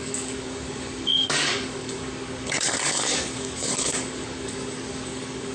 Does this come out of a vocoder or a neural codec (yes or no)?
yes